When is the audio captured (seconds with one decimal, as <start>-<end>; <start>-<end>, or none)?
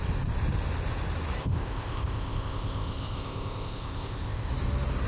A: 0.0-1.4; 4.5-5.1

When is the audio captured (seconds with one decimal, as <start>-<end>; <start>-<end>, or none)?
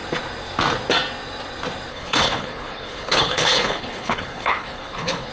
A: 0.0-1.9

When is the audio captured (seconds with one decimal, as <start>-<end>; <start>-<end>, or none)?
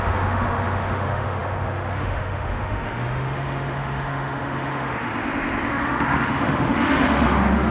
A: 5.1-5.7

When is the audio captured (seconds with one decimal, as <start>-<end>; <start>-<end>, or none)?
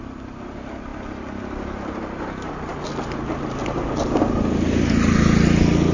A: 0.0-5.9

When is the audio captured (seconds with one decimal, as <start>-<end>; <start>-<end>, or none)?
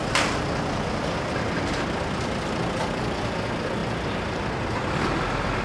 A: 0.0-5.6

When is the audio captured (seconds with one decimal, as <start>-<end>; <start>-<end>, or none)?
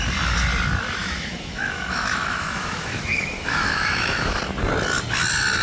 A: 0.0-1.0; 4.4-5.6